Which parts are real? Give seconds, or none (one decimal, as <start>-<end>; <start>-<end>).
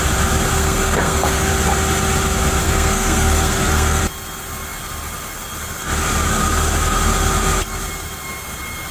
0.0-0.5; 1.5-2.6; 4.0-8.9